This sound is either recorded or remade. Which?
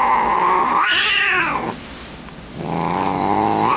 recorded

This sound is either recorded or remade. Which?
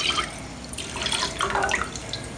recorded